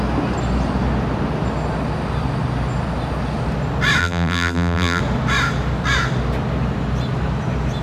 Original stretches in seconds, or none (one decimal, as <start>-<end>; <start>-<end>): 0.0-4.0; 5.0-7.8

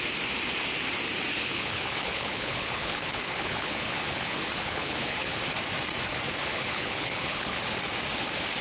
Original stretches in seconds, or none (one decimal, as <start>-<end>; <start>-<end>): 0.0-1.3; 5.4-6.4; 7.6-8.6

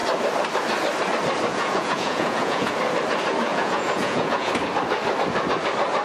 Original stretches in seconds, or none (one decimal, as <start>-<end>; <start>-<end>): 0.0-1.5; 2.7-3.5; 4.5-6.0